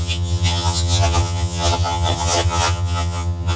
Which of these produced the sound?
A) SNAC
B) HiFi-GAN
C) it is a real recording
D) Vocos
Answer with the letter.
B